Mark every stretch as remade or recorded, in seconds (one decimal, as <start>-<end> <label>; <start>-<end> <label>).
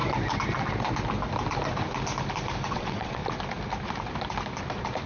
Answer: 0.0-2.7 recorded; 2.7-3.2 remade; 3.2-5.1 recorded